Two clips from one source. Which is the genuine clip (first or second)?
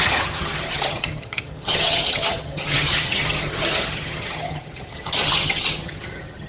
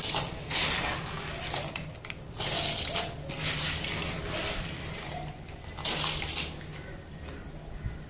second